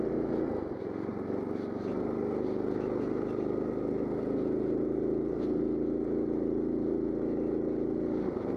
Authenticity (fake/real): real